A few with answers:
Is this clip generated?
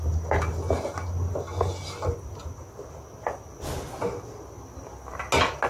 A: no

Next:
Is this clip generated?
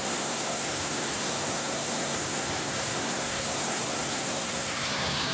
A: yes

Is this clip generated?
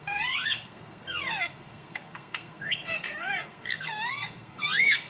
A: yes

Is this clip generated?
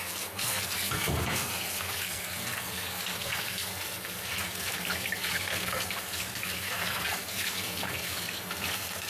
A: yes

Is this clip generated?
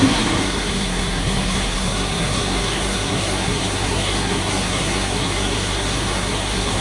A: yes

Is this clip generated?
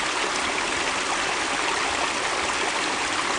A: no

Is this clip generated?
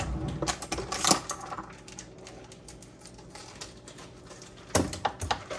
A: no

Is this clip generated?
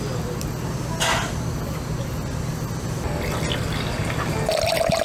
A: no